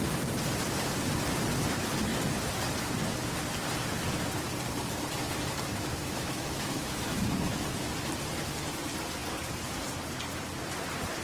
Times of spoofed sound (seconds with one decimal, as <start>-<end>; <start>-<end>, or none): 5.7-7.9